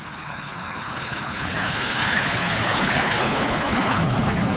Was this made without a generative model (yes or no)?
no